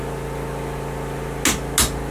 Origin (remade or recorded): recorded